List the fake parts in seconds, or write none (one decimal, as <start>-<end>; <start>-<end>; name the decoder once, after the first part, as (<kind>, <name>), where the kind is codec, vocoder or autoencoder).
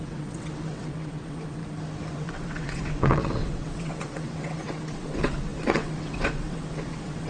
0.0-1.6 (vocoder, WaveNeXt); 2.1-7.3